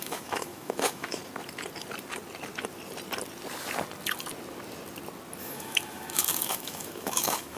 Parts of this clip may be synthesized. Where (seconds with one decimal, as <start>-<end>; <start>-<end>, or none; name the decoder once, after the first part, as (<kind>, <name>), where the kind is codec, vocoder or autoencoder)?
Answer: 0.0-1.2 (autoencoder, DAC-VAE); 5.4-7.6